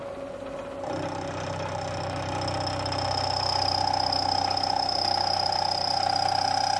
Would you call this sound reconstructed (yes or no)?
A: no